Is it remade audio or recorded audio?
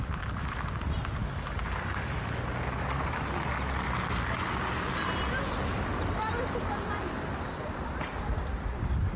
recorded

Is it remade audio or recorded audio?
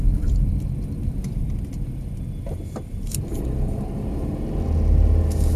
recorded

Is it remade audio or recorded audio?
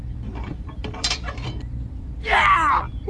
remade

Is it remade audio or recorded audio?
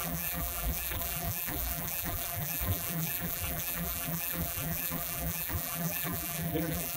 remade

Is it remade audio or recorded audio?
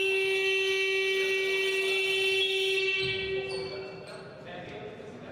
recorded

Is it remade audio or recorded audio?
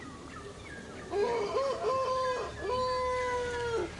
recorded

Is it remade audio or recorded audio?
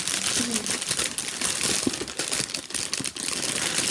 recorded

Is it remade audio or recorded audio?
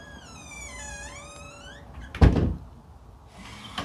recorded